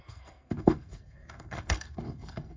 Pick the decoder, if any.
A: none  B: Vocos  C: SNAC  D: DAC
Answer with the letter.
C